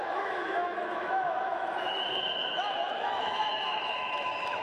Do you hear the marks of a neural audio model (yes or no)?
yes